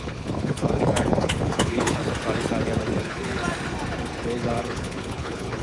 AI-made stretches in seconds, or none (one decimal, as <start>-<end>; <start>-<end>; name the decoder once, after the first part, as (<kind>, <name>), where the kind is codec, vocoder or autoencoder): 0.0-2.0 (codec, HILCodec); 3.0-3.4; 4.2-5.6